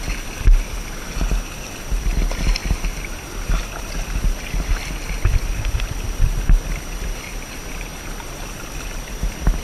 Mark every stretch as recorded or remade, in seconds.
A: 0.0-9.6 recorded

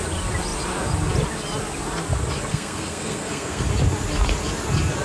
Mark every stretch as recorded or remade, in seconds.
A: 0.0-2.5 recorded; 2.5-3.7 remade; 3.7-5.0 recorded

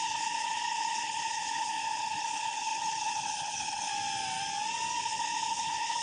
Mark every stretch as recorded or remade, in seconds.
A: 0.0-3.9 remade; 3.9-5.0 recorded; 5.0-6.0 remade

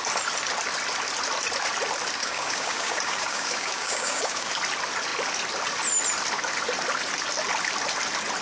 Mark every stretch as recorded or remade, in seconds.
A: 0.0-2.2 recorded; 2.2-4.5 remade; 4.5-8.4 recorded

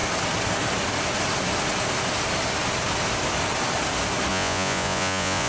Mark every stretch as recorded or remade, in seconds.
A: 0.0-4.3 recorded; 4.3-5.5 remade

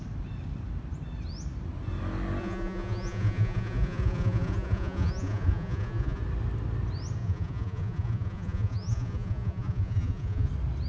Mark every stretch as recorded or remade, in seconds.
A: 0.0-2.4 recorded; 2.4-6.2 remade; 6.2-7.2 recorded; 7.2-10.5 remade; 10.5-10.9 recorded